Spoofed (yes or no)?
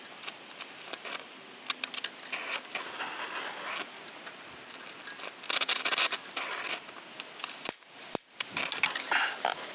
no